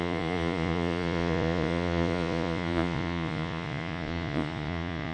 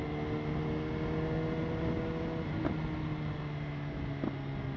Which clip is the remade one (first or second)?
first